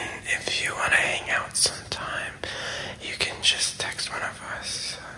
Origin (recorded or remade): recorded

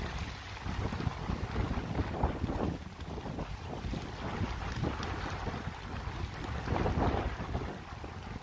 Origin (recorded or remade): recorded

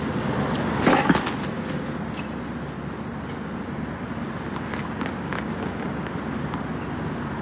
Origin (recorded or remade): recorded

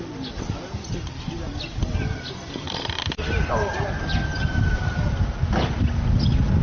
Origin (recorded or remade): recorded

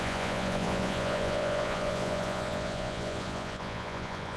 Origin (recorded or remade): remade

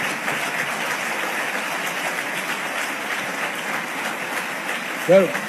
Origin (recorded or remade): recorded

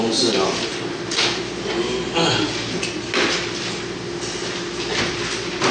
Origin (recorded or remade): recorded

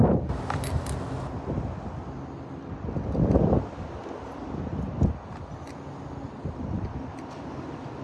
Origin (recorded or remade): recorded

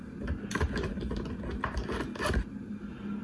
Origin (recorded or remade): recorded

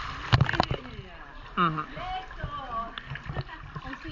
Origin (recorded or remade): recorded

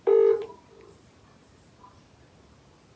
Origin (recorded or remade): recorded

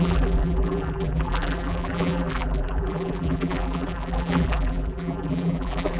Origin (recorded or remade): remade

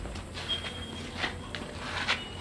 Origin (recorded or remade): recorded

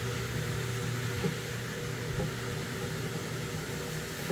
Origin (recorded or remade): recorded